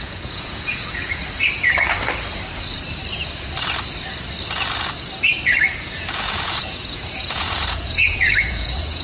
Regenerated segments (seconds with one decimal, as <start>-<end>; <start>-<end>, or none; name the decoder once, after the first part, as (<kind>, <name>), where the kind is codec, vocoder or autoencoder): 0.0-1.2 (vocoder, Vocos); 5.7-9.0